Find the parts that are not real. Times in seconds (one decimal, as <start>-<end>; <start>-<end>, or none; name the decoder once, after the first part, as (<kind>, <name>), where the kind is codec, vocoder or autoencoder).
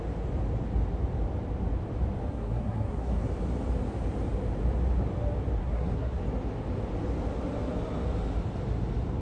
2.3-3.3 (codec, SNAC); 5.6-6.2